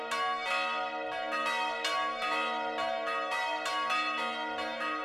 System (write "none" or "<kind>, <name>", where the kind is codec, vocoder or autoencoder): none